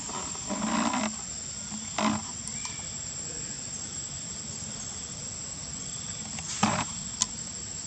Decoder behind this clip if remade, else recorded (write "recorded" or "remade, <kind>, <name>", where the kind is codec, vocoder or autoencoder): recorded